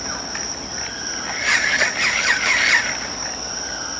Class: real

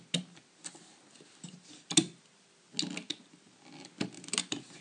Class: real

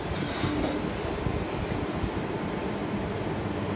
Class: real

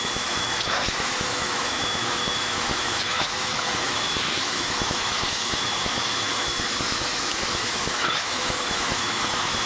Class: fake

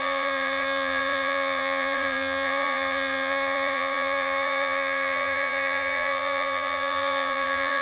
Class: fake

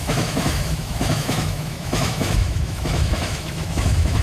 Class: fake